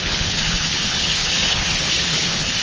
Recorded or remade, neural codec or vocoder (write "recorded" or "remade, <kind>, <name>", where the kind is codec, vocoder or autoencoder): remade, codec, HILCodec